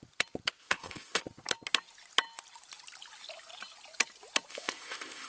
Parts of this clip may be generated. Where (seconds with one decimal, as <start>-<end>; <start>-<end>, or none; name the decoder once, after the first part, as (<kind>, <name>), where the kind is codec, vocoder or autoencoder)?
0.6-1.2 (codec, ZipCodec); 4.5-5.3